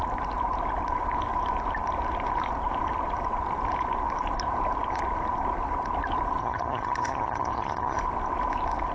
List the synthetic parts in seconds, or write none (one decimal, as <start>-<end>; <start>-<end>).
6.4-8.0